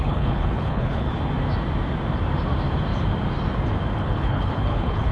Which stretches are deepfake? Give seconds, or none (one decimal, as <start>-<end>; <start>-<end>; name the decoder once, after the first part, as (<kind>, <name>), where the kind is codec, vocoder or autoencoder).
0.0-1.1 (codec, HILCodec); 4.0-5.1